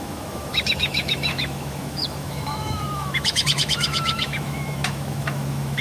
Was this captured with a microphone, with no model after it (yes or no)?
no